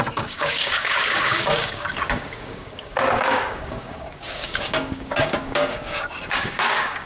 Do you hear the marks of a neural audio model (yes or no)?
yes